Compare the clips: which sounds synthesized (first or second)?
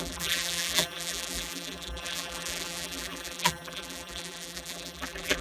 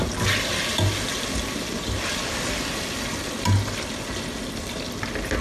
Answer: first